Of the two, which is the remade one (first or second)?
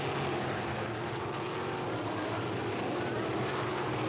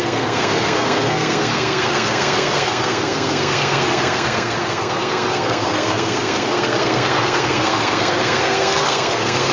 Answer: second